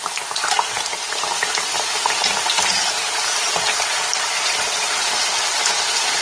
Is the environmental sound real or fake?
real